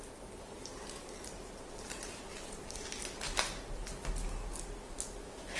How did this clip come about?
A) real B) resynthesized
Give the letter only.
A